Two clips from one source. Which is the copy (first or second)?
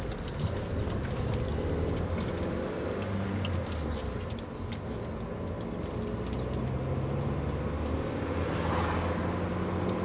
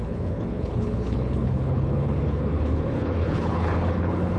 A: second